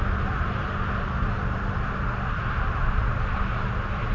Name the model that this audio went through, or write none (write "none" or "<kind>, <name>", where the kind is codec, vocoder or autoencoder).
none